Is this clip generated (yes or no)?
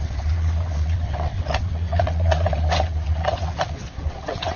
yes